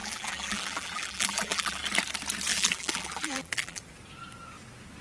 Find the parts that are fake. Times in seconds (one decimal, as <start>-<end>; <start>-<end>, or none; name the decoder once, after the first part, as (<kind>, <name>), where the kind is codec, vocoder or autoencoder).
0.0-1.8 (vocoder, BigVGAN v2); 2.5-3.8